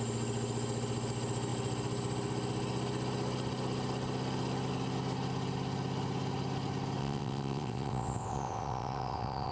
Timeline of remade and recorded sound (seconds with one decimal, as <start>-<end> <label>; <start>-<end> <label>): 0.0-7.0 recorded; 7.0-9.5 remade